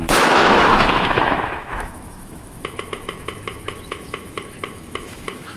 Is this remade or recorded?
remade